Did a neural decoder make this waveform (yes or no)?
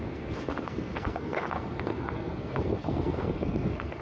yes